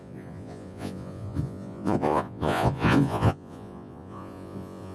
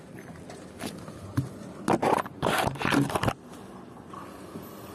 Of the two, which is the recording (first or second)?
second